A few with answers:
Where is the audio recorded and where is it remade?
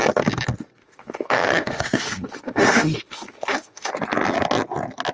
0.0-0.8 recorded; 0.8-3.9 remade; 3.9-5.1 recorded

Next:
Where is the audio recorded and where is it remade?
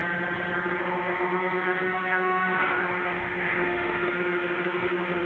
0.0-0.8 recorded; 0.8-5.3 remade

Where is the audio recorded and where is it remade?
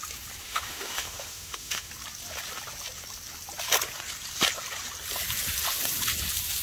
0.0-0.4 recorded; 0.4-1.9 remade; 1.9-6.6 recorded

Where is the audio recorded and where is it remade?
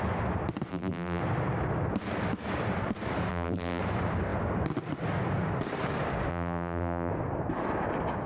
0.0-0.7 recorded; 0.7-1.2 remade; 1.2-3.3 recorded; 3.3-3.8 remade; 3.8-6.3 recorded; 6.3-7.1 remade; 7.1-8.3 recorded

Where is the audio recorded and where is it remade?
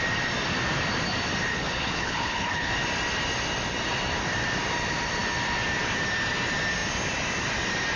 0.0-1.5 recorded; 1.5-2.7 remade; 2.7-8.0 recorded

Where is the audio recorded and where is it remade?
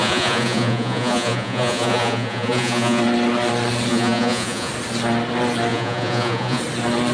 0.0-3.0 remade; 3.0-3.9 recorded; 3.9-4.7 remade; 4.7-5.7 recorded; 5.7-6.6 remade; 6.6-7.1 recorded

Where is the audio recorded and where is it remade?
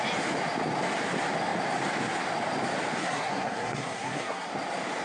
0.0-3.0 recorded; 3.0-4.5 remade; 4.5-5.0 recorded